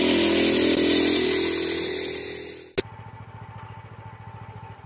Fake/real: real